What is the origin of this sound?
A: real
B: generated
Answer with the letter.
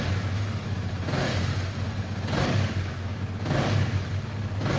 A